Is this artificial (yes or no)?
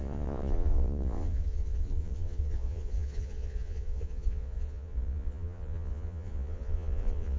yes